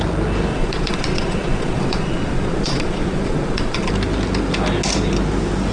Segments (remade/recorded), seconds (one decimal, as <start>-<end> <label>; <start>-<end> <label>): 0.0-0.5 recorded; 0.5-3.9 remade; 3.9-5.7 recorded